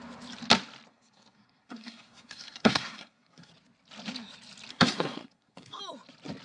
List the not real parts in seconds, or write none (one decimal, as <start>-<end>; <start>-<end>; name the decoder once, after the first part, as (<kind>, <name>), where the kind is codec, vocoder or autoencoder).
0.9-3.5 (codec, SNAC); 4.7-5.8